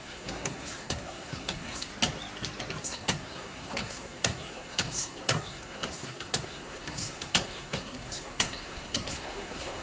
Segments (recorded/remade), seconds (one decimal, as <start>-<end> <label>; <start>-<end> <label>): 0.0-1.9 remade; 1.9-2.8 recorded; 2.8-9.8 remade